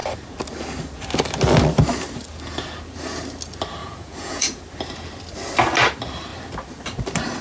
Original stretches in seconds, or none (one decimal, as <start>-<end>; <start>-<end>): 0.0-3.8; 4.6-7.4